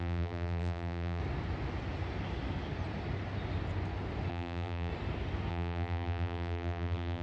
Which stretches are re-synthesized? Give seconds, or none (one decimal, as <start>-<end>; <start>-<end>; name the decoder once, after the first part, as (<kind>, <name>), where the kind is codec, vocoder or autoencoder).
0.0-1.2 (vocoder, BigVGAN v2); 4.3-4.9; 5.5-7.2